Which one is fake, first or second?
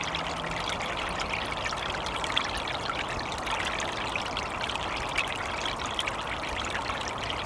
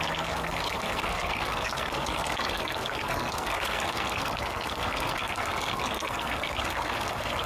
second